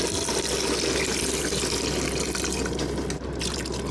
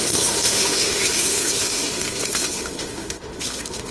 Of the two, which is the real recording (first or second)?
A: first